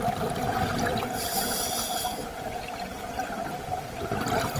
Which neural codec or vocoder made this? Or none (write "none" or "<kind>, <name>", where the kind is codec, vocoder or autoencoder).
none